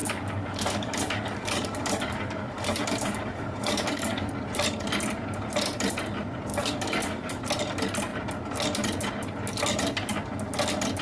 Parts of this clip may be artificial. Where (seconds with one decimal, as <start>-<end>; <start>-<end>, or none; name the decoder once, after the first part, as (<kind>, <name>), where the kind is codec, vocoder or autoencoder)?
0.0-4.3 (codec, DAC); 6.5-7.4